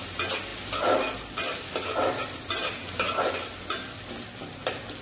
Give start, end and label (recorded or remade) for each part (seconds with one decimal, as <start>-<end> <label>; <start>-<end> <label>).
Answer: 0.0-5.0 recorded